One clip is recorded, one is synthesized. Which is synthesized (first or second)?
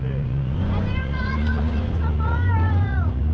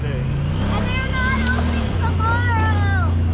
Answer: first